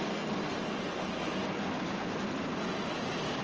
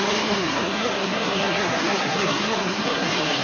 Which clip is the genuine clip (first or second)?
first